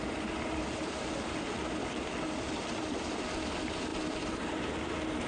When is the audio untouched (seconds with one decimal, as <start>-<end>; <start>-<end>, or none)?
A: 0.0-5.3